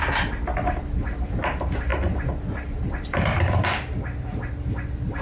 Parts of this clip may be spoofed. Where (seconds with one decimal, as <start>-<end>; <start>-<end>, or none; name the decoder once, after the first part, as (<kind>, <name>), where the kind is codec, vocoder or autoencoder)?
none

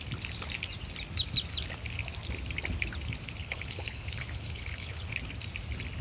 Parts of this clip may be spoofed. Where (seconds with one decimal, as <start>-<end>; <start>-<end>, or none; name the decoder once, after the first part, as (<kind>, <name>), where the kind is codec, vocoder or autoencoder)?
3.4-5.1 (codec, HILCodec)

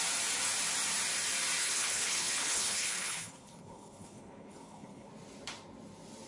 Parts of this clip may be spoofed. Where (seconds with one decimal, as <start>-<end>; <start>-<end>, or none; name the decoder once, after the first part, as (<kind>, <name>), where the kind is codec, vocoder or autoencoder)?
1.6-5.1 (codec, HILCodec)